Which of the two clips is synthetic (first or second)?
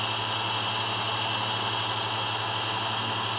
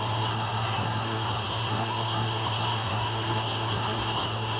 second